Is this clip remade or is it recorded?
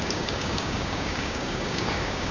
remade